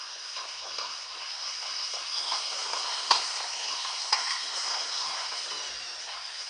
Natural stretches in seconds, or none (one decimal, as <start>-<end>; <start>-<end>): 5.5-6.0